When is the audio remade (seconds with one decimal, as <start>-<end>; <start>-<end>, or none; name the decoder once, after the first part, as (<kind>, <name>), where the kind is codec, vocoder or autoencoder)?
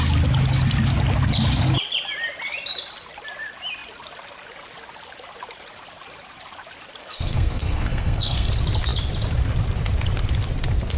7.0-8.5 (codec, SNAC)